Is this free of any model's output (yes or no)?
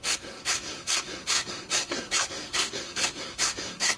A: no